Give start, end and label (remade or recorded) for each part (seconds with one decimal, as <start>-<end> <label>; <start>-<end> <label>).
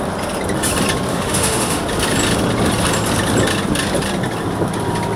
0.0-1.1 recorded; 1.1-1.8 remade; 1.8-5.2 recorded